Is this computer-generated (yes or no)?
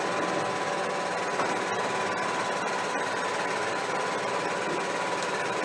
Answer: no